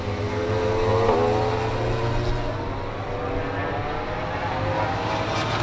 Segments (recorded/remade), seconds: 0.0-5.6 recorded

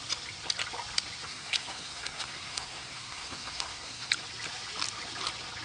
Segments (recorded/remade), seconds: 0.0-1.2 recorded; 1.2-4.1 remade; 4.1-5.6 recorded

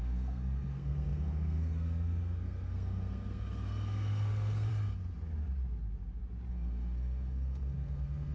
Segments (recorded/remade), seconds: 0.0-4.7 remade; 4.7-6.5 recorded; 6.5-8.3 remade

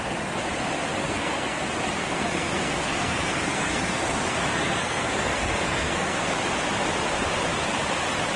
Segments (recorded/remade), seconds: 0.0-1.0 recorded; 1.0-1.6 remade; 1.6-2.0 recorded; 2.0-6.3 remade; 6.3-8.4 recorded